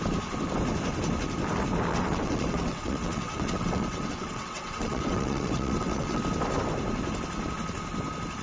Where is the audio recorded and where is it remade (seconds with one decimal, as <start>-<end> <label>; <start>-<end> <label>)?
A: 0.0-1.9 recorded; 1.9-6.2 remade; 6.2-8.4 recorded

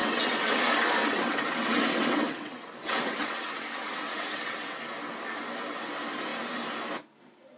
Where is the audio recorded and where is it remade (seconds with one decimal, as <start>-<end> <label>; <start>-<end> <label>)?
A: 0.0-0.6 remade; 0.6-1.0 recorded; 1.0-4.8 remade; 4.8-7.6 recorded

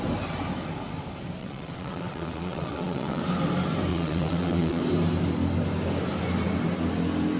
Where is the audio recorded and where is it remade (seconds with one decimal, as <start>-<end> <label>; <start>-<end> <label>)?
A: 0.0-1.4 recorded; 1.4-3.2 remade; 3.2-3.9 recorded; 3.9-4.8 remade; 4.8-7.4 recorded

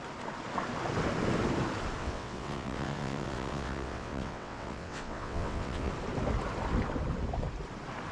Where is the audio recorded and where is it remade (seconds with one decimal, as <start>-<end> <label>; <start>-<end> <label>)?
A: 0.0-2.0 recorded; 2.0-5.9 remade; 5.9-8.1 recorded

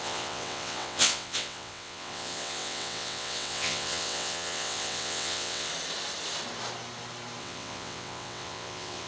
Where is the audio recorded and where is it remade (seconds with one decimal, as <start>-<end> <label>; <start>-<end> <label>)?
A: 0.0-5.7 remade; 5.7-7.4 recorded; 7.4-9.1 remade